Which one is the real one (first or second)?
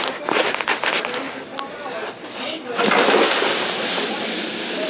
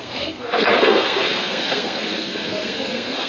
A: first